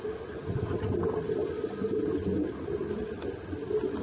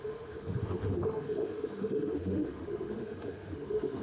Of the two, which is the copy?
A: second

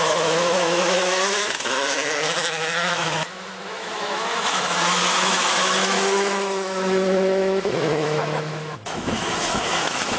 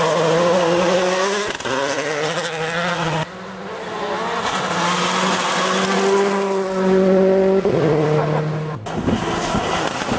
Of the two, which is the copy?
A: first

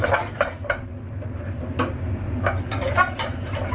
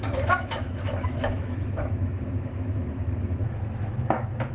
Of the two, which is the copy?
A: second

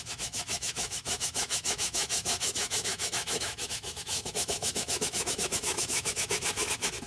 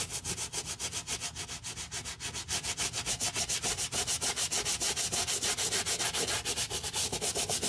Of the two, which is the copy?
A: first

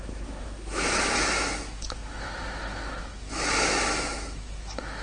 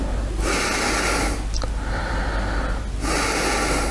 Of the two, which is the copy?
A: first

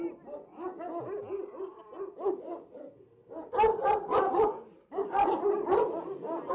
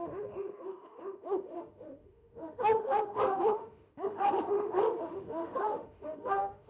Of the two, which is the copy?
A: second